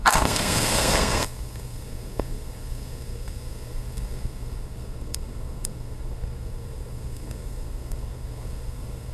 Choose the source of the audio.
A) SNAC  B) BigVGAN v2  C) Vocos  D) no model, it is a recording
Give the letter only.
A